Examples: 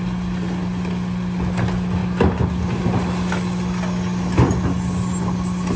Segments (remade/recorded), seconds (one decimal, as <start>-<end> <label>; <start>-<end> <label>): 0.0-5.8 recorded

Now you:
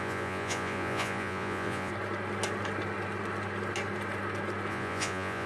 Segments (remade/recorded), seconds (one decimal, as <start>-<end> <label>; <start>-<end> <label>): 0.0-1.9 remade; 1.9-4.7 recorded; 4.7-5.5 remade

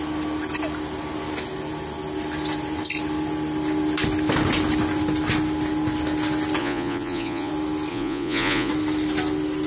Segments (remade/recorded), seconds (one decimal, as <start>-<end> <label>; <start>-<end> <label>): 0.0-6.6 recorded; 6.6-7.5 remade; 7.5-7.9 recorded; 7.9-8.7 remade; 8.7-9.7 recorded

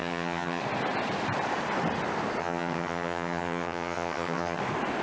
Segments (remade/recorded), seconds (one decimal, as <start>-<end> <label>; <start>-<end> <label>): 0.0-0.6 remade; 0.6-2.4 recorded; 2.4-4.6 remade; 4.6-5.0 recorded